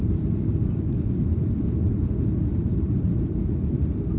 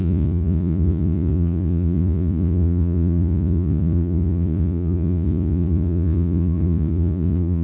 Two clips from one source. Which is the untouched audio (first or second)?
first